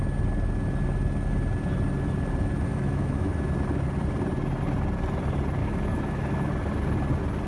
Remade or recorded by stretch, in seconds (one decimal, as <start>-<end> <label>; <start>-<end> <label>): 0.0-2.7 recorded; 2.7-3.3 remade; 3.3-5.6 recorded; 5.6-6.5 remade; 6.5-7.5 recorded